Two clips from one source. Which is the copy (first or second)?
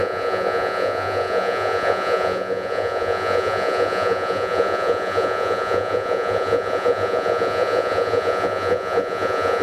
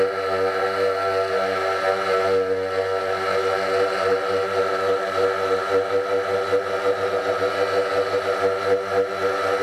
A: first